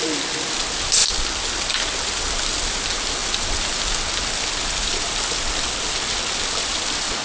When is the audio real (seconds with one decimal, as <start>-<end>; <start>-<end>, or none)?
0.0-7.2